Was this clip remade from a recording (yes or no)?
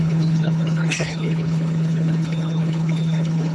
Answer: yes